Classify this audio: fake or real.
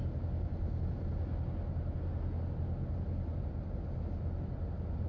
real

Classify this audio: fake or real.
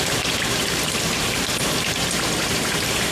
fake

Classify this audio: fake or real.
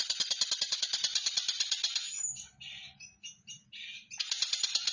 real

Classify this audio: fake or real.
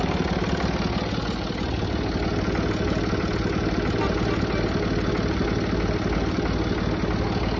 real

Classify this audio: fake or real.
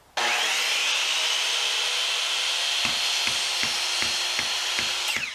real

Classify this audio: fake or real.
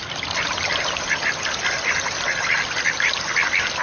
real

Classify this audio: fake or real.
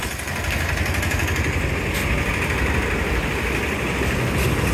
real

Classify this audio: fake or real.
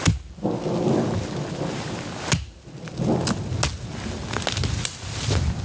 real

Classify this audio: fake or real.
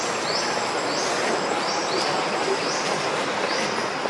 fake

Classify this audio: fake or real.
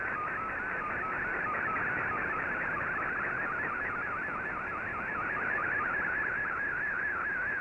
fake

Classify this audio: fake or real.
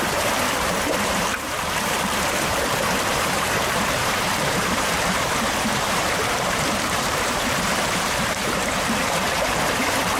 fake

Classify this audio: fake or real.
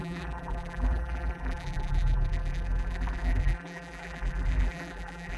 fake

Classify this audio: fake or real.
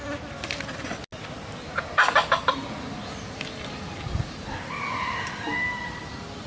real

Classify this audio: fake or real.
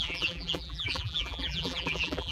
fake